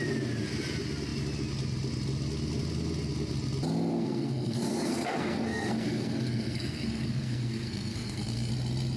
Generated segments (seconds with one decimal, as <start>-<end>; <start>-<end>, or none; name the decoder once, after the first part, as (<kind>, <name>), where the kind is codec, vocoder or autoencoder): 3.9-8.5 (codec, SNAC)